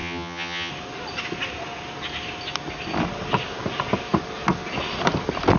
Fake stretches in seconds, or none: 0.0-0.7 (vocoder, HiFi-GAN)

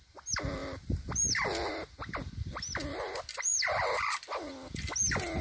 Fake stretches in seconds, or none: none